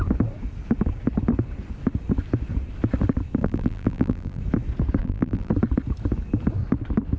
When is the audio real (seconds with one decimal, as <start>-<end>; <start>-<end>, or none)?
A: 0.0-3.4; 4.4-5.0; 5.5-7.2